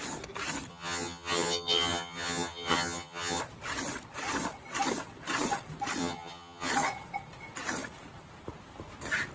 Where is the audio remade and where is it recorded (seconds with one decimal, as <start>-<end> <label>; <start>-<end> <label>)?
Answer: 0.0-0.7 recorded; 0.7-3.4 remade; 3.4-6.0 recorded; 6.0-6.7 remade; 6.7-9.3 recorded